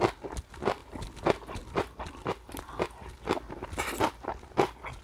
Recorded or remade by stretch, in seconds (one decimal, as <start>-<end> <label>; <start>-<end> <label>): 0.0-5.0 recorded